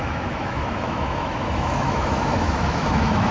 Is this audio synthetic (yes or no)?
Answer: yes